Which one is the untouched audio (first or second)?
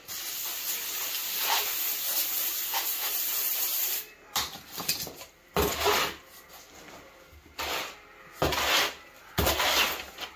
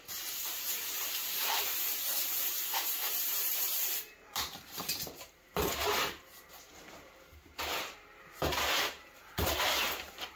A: first